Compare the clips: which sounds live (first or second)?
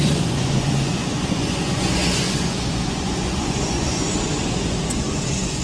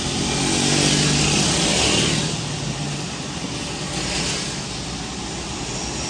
second